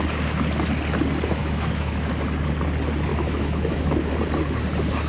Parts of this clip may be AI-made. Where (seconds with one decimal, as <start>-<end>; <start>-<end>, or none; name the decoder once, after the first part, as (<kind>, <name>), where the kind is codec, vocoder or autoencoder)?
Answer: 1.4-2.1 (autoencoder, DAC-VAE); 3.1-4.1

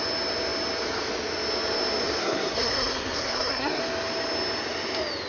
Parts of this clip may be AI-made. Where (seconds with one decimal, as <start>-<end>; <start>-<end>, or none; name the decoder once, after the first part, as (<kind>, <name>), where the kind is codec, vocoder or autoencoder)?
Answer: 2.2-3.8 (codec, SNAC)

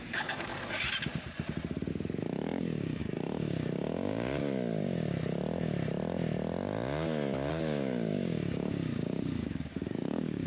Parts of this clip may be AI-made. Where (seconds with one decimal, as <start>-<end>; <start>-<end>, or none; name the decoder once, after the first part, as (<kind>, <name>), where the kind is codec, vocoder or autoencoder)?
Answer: 0.0-0.5 (codec, DAC); 1.9-4.4; 7.5-10.5

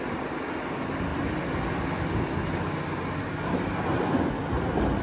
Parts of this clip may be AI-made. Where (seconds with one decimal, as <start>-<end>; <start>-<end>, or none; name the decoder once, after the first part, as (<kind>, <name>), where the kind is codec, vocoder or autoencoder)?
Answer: none

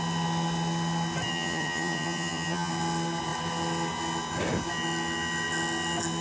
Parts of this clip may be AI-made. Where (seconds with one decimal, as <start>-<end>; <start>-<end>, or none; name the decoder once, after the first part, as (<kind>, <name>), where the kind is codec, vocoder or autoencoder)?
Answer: 1.3-2.7 (vocoder, HiFi-GAN)

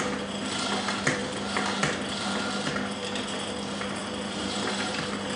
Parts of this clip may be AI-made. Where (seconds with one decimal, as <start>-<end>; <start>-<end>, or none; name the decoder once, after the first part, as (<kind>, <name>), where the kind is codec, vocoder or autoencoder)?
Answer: none

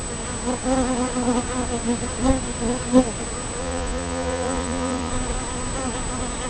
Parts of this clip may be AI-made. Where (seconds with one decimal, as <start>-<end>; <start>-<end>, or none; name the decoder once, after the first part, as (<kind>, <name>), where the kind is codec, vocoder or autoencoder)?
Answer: 3.6-5.1 (vocoder, Vocos)